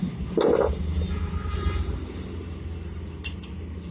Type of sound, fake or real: real